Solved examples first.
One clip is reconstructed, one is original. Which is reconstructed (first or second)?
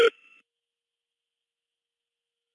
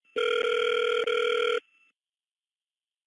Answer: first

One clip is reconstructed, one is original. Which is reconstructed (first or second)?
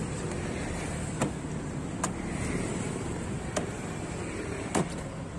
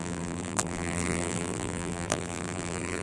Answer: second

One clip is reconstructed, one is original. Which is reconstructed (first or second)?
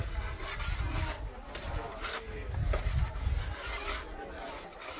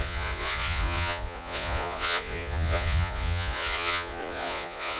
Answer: second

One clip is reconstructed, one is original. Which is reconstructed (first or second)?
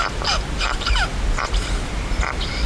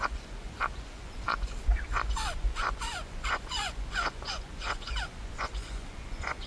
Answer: second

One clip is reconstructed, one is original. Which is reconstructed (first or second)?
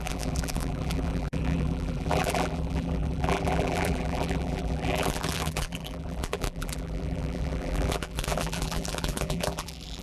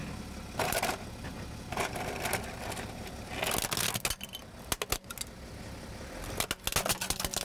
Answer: first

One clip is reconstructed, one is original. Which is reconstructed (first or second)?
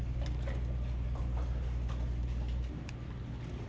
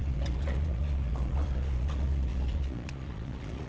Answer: second